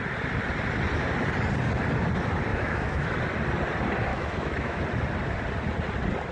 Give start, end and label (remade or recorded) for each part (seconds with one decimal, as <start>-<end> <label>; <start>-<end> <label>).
0.0-2.5 recorded; 2.5-3.1 remade; 3.1-4.1 recorded; 4.1-4.8 remade; 4.8-6.3 recorded